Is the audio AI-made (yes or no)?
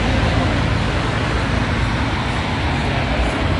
no